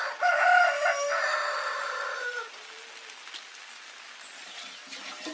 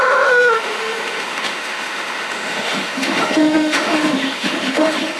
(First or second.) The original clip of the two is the first